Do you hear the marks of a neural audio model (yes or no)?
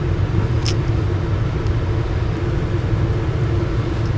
no